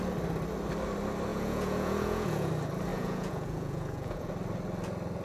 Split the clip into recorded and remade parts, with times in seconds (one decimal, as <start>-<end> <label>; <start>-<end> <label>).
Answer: 0.0-1.3 recorded; 1.3-2.5 remade; 2.5-2.9 recorded; 2.9-4.3 remade; 4.3-5.2 recorded